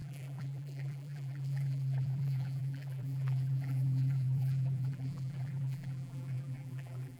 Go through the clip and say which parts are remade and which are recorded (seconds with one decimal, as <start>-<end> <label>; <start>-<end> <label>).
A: 0.0-7.2 remade

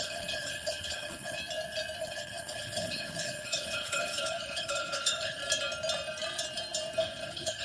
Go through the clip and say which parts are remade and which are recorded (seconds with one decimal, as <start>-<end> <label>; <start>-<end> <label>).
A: 0.0-1.4 remade; 1.4-2.0 recorded; 2.0-5.4 remade; 5.4-7.0 recorded; 7.0-7.6 remade

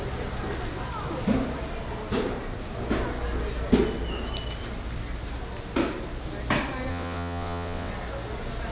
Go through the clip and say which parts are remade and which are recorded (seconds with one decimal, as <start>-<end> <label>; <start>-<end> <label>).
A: 0.0-6.9 recorded; 6.9-7.9 remade; 7.9-8.7 recorded